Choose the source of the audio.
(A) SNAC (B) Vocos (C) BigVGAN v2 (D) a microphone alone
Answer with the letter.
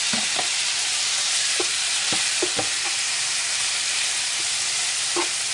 C